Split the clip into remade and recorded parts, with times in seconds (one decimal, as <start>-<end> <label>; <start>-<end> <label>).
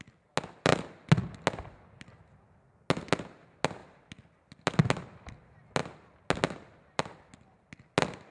0.0-8.3 recorded